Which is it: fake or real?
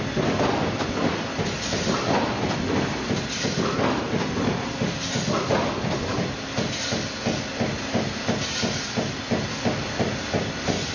real